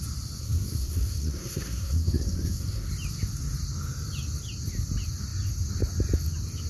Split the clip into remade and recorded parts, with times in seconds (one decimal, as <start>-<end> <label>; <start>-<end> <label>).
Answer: 0.0-0.4 recorded; 0.4-2.9 remade; 2.9-6.7 recorded